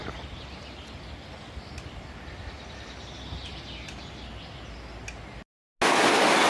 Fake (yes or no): no